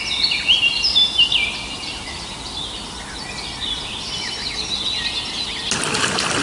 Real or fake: real